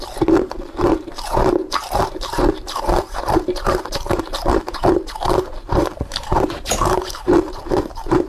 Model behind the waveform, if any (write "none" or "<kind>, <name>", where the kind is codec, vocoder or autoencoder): vocoder, BigVGAN v2